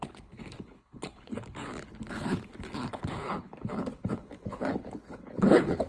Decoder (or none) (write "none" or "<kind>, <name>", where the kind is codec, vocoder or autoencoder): codec, HILCodec